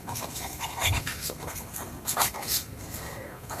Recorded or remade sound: remade